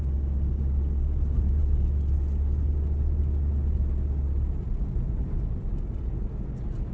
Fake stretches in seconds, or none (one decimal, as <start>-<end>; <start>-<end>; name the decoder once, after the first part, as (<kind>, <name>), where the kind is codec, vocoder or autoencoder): none